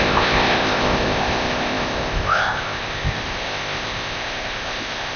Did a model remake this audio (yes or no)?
yes